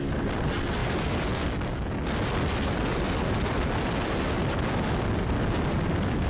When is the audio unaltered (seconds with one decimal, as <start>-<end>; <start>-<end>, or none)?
0.0-6.3